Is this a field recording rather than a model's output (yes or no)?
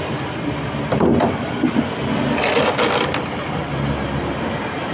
yes